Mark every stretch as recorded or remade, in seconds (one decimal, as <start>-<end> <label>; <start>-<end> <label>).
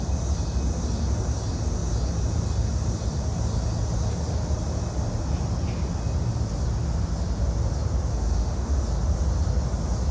0.0-8.1 recorded; 8.1-8.8 remade; 8.8-10.1 recorded